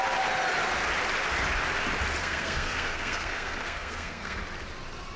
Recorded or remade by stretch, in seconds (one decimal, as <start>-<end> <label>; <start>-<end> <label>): 0.0-2.2 recorded; 2.2-4.4 remade; 4.4-5.2 recorded